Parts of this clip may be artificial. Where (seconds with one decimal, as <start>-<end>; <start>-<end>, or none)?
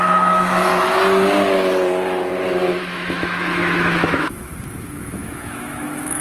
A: 0.0-0.7; 2.8-6.2